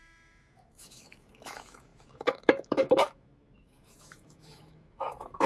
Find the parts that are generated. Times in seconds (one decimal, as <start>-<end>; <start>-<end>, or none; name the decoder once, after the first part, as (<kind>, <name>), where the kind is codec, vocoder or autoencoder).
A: 0.0-5.5 (autoencoder, DAC-VAE)